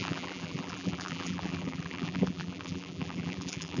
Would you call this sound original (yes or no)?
no